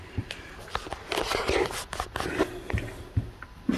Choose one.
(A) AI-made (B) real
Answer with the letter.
B